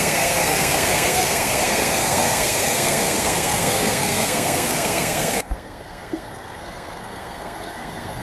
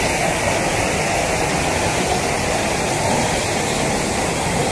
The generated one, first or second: first